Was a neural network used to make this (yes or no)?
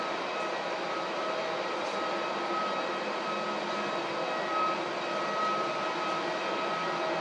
no